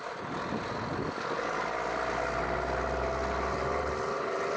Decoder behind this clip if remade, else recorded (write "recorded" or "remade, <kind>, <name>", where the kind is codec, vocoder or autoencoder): recorded